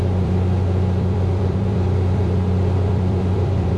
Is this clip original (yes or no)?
no